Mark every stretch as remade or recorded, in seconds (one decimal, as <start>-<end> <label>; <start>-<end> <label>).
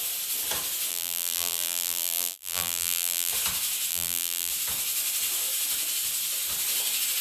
0.0-0.9 recorded; 0.9-3.3 remade; 3.3-3.9 recorded; 3.9-4.5 remade; 4.5-7.2 recorded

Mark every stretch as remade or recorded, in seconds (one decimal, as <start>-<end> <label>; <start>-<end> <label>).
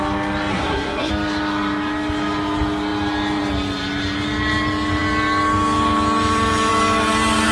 0.0-0.5 recorded; 0.5-1.1 remade; 1.1-7.5 recorded